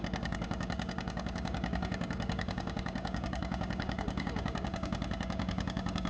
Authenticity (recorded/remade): remade